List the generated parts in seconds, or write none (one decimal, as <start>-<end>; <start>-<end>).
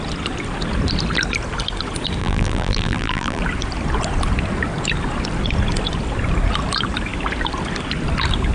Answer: 2.2-3.4